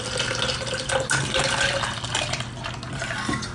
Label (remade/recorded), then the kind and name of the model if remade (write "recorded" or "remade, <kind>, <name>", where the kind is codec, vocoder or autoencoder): recorded